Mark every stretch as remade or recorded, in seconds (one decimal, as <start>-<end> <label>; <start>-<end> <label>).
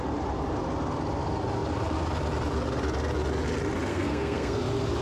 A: 0.0-3.9 recorded; 3.9-4.6 remade; 4.6-5.0 recorded